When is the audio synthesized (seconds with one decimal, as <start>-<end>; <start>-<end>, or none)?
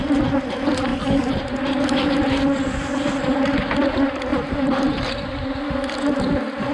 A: 4.3-4.9